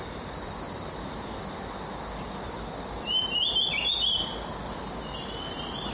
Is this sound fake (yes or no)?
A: no